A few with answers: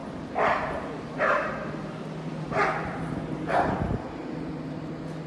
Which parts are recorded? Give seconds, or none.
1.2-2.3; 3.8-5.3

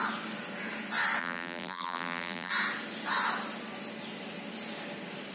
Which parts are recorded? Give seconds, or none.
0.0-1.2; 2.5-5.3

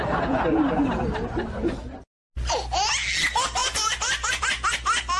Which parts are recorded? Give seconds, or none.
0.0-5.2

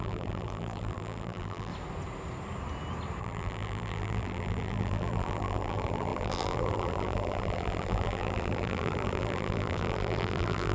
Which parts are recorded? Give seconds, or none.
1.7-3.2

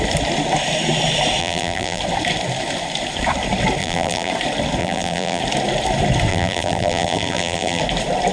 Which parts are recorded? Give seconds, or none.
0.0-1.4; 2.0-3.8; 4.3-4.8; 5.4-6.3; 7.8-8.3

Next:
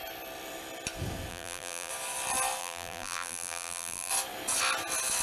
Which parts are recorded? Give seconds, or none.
0.0-1.3; 1.9-2.6; 4.1-5.2

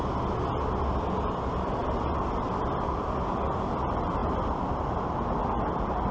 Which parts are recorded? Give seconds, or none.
0.0-1.8; 3.5-4.2; 5.0-6.1

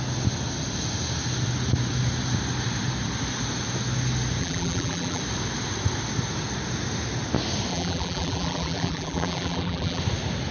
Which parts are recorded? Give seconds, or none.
0.0-4.4; 5.2-7.7; 10.0-10.5